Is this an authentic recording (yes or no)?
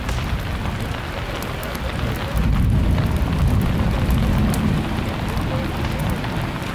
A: yes